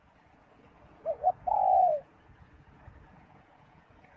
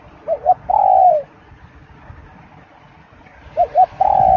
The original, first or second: second